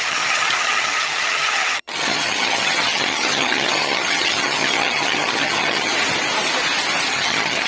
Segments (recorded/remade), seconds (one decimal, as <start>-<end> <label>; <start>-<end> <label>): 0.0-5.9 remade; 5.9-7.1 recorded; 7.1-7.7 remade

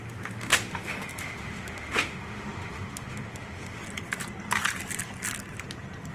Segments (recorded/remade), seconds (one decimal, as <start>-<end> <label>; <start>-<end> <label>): 0.0-3.8 remade; 3.8-6.1 recorded

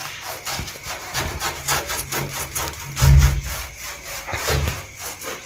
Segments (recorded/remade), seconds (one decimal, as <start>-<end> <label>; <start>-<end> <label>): 0.0-2.5 remade; 2.5-4.3 recorded; 4.3-4.9 remade; 4.9-5.5 recorded

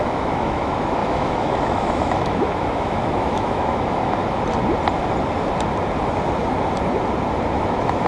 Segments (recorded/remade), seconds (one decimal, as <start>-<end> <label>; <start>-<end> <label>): 0.0-4.2 remade; 4.2-7.5 recorded; 7.5-8.1 remade

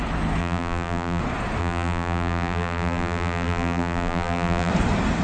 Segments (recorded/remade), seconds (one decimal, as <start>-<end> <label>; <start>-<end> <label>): 0.0-0.4 recorded; 0.4-1.2 remade; 1.2-1.6 recorded; 1.6-4.7 remade; 4.7-5.2 recorded